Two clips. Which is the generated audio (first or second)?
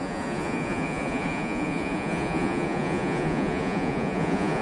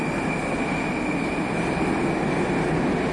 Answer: first